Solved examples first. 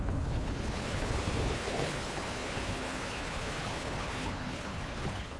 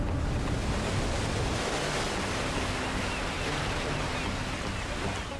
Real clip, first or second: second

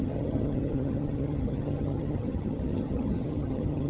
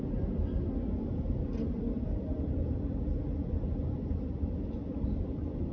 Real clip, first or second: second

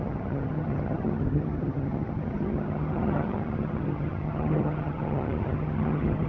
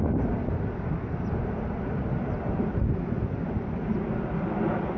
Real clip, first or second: second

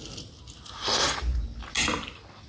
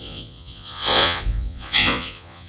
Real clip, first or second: first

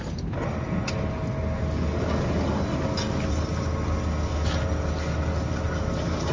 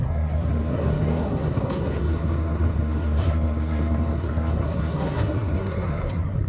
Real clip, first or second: first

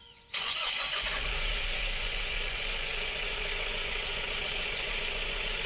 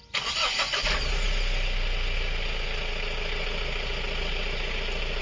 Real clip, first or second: second